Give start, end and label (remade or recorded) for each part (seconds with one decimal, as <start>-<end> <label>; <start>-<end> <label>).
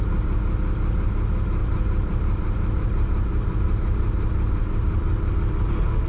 0.0-1.6 recorded; 1.6-5.3 remade; 5.3-6.1 recorded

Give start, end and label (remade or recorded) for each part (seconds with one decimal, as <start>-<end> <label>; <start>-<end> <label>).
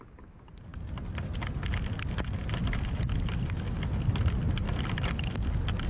0.0-5.9 recorded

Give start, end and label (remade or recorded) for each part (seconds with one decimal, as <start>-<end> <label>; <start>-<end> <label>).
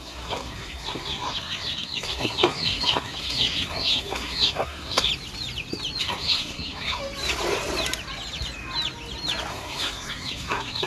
0.0-5.1 remade; 5.1-6.0 recorded; 6.0-7.0 remade; 7.0-9.5 recorded; 9.5-10.9 remade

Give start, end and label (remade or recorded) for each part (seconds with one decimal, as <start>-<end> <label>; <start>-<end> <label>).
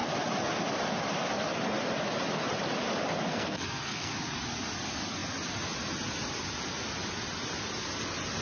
0.0-3.3 recorded; 3.3-4.1 remade; 4.1-8.4 recorded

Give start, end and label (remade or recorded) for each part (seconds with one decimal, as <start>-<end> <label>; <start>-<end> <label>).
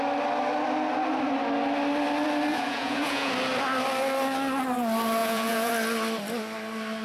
0.0-2.5 recorded; 2.5-3.3 remade; 3.3-5.2 recorded; 5.2-5.7 remade; 5.7-7.0 recorded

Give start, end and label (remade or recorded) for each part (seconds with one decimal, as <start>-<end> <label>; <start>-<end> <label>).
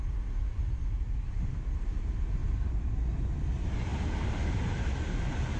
0.0-2.4 remade; 2.4-3.2 recorded; 3.2-5.6 remade